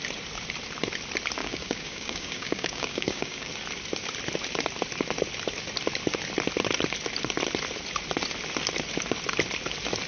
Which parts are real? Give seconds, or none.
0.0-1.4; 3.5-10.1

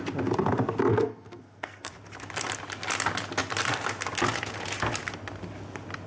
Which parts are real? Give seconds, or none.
0.0-0.9; 1.9-6.1